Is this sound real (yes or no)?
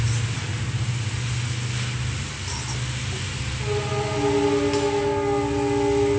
yes